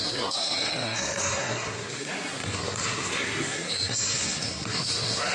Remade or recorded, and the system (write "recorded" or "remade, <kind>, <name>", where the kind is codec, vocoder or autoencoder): remade, codec, SNAC